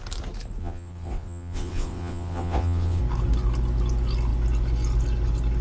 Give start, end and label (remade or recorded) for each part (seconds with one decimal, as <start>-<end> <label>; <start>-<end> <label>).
0.0-0.6 recorded; 0.6-3.0 remade; 3.0-5.6 recorded

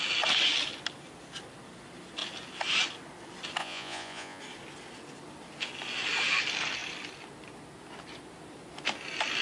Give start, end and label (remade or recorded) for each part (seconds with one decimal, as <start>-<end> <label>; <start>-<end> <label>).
0.0-3.6 recorded; 3.6-4.4 remade; 4.4-9.4 recorded

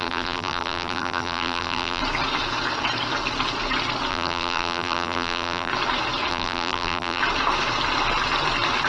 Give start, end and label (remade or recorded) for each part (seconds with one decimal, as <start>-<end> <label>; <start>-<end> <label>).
0.0-2.0 remade; 2.0-4.1 recorded; 4.1-5.7 remade; 5.7-6.3 recorded; 6.3-7.2 remade; 7.2-8.9 recorded

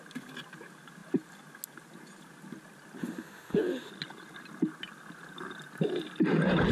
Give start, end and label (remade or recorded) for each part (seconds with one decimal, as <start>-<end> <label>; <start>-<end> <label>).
0.0-3.0 recorded; 3.0-3.9 remade; 3.9-6.7 recorded

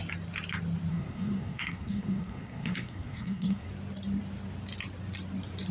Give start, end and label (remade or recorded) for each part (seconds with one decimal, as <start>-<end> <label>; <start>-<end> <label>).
0.0-0.9 recorded; 0.9-3.7 remade; 3.7-5.7 recorded

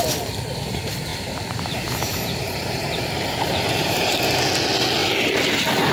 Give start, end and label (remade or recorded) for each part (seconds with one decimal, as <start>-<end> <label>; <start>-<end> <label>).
0.0-1.1 recorded; 1.1-4.2 remade; 4.2-5.9 recorded